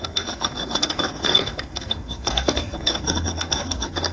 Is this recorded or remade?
remade